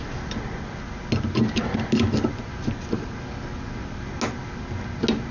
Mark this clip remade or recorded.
recorded